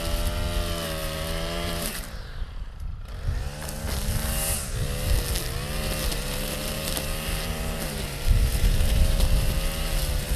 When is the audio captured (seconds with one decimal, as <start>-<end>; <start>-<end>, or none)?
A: 0.0-1.0; 3.1-6.1